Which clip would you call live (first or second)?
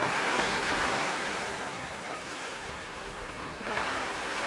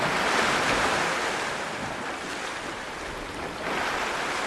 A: second